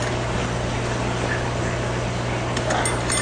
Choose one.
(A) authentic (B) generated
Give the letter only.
A